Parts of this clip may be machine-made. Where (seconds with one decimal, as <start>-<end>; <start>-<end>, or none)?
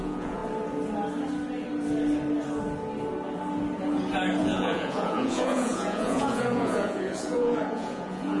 0.0-0.4; 4.4-8.4